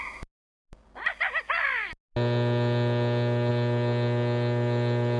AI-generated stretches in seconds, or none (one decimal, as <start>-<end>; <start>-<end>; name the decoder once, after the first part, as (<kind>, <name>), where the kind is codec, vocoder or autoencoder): none